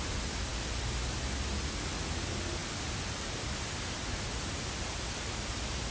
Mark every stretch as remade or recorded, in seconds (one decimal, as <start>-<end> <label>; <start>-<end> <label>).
0.0-2.6 recorded; 2.6-5.5 remade; 5.5-5.9 recorded